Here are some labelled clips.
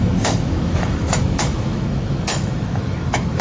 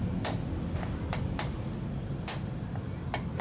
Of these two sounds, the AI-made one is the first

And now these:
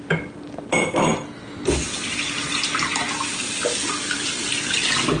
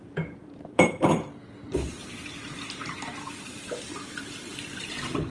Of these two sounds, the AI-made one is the second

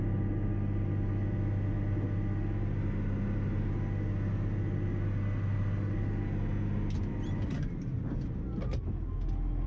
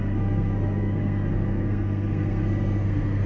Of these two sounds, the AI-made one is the second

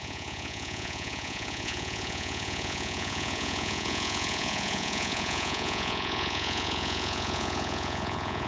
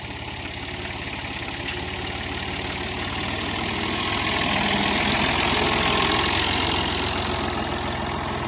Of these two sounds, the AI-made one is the first